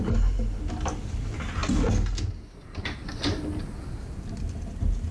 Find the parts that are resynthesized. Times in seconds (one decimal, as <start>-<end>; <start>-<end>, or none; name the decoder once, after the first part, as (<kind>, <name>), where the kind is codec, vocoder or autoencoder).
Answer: none